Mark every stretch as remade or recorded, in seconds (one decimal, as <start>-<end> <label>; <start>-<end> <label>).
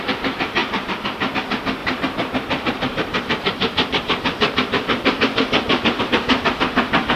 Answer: 0.0-0.6 recorded; 0.6-1.3 remade; 1.3-1.8 recorded; 1.8-6.0 remade; 6.0-7.2 recorded